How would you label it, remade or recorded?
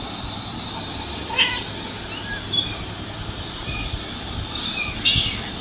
recorded